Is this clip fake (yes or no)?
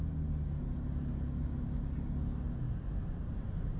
no